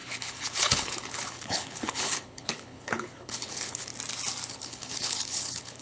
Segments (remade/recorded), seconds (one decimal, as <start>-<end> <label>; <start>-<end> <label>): 0.0-3.9 remade; 3.9-4.5 recorded; 4.5-5.8 remade